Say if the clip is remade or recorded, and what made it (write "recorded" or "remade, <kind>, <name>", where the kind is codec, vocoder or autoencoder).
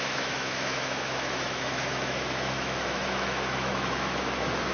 remade, autoencoder, DAC-VAE